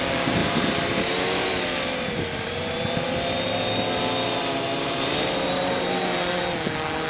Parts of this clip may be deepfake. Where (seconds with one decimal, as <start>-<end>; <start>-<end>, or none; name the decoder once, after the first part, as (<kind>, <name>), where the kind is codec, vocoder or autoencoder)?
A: 0.4-2.8 (vocoder, BigVGAN v2); 4.7-6.0